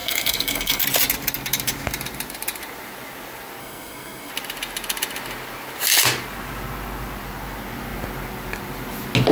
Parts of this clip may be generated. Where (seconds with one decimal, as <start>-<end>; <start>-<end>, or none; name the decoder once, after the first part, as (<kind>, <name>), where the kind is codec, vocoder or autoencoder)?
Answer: 0.0-0.8 (codec, SNAC); 3.6-4.3